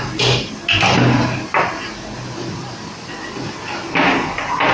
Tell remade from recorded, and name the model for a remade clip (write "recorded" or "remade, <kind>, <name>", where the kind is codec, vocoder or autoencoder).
recorded